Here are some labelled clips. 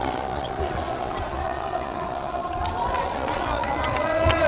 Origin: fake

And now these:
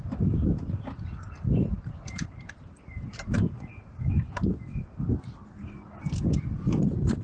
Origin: real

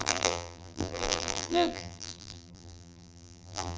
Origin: fake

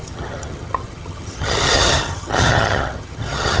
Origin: fake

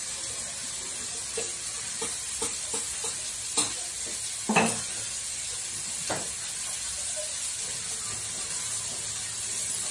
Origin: real